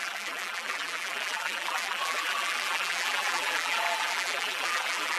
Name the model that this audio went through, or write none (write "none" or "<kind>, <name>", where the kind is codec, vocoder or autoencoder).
vocoder, BigVGAN v2